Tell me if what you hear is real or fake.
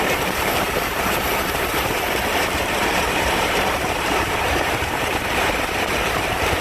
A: fake